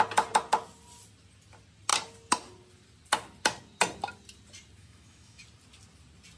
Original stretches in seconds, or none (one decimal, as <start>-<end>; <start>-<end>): 0.0-4.8; 5.4-6.4

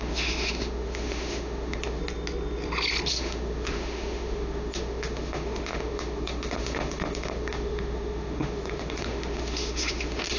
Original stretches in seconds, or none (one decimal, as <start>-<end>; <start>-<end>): 2.0-3.1

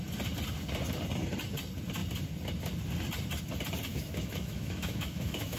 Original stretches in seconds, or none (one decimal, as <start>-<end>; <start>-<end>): 0.0-3.9

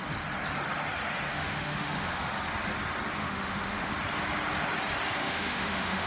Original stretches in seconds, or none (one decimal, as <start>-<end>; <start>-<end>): 0.0-1.3; 2.3-3.2; 3.9-5.2

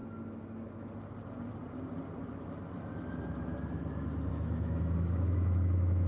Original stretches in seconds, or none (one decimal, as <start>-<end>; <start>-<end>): 0.9-4.3

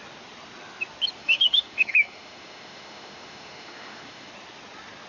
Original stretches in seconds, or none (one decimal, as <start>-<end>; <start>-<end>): 0.0-1.2; 4.3-5.1

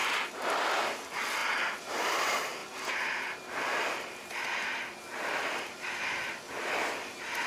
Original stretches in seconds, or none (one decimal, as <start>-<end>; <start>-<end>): 0.0-7.5